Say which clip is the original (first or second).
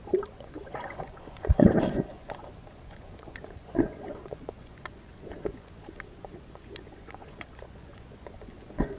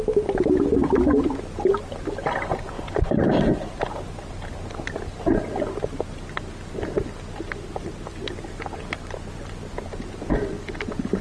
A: second